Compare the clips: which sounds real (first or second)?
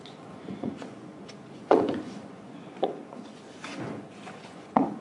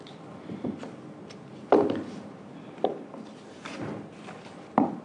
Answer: second